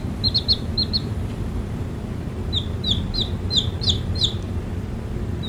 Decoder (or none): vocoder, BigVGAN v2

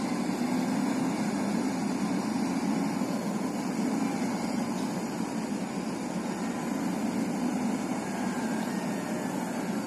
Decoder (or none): none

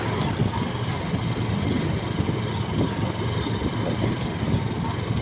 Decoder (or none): none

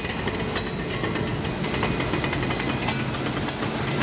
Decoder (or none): none